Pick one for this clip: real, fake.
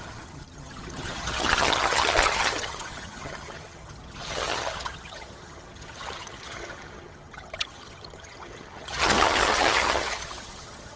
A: fake